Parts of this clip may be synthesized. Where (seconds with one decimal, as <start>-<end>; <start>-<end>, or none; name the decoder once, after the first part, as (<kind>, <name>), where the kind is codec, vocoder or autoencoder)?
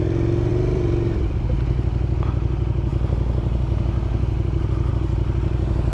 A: 0.5-1.3 (vocoder, BigVGAN v2)